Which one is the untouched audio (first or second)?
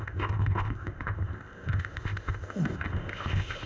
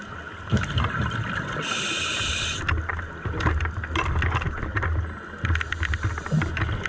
second